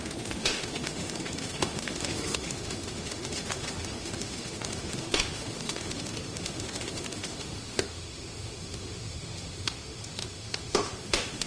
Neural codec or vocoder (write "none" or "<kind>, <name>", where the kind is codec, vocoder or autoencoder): autoencoder, DAC-VAE